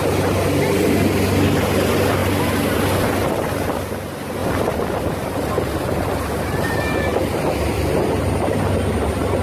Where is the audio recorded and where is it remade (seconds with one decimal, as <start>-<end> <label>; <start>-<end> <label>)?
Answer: 0.0-7.1 recorded; 7.1-8.6 remade; 8.6-9.4 recorded